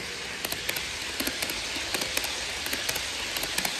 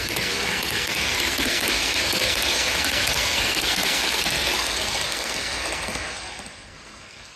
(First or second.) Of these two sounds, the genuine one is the first